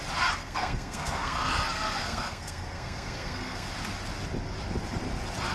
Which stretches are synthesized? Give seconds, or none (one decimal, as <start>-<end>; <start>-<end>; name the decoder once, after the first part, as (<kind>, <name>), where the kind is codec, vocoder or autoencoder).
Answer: 0.4-3.7 (codec, SNAC)